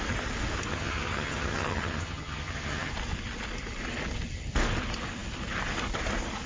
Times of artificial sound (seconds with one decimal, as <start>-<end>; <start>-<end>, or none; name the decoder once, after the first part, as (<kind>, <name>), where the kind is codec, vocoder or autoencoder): 0.7-2.9 (vocoder, HiFi-GAN)